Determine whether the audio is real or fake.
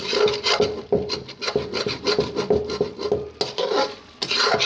real